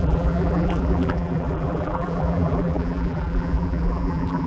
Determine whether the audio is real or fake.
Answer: fake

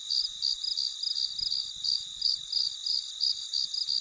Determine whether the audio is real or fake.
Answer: real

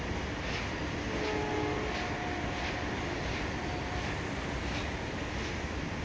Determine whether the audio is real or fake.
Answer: real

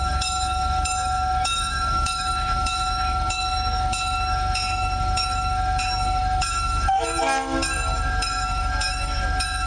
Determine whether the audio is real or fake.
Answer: fake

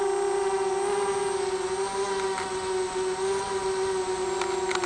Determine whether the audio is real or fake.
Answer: real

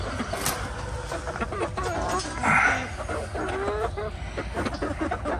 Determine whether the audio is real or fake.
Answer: real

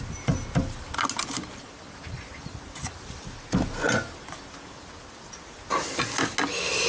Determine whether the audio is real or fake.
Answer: real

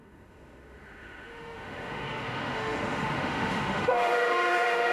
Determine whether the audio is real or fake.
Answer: fake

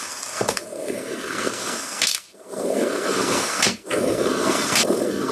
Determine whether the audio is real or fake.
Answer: fake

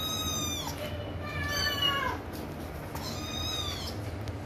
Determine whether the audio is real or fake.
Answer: real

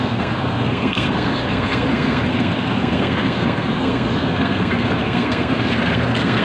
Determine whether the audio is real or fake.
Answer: fake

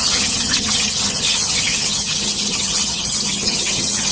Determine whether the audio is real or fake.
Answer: fake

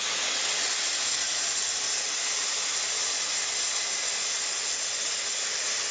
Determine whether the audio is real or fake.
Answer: real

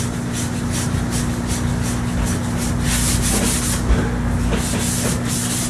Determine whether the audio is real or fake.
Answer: real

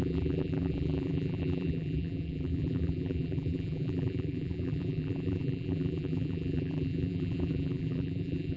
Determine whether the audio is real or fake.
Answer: fake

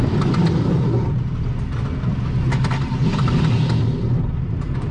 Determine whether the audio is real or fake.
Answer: real